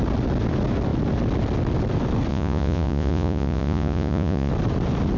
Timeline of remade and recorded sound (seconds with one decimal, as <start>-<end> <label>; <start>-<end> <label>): 0.0-2.3 recorded; 2.3-4.5 remade; 4.5-5.2 recorded